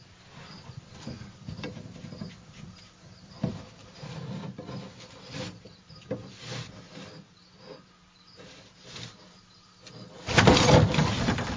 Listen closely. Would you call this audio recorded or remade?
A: recorded